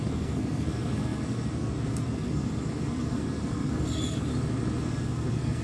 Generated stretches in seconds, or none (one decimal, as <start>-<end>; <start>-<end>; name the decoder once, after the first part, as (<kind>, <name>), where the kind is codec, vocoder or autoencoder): 0.0-4.3 (codec, SNAC); 4.8-5.6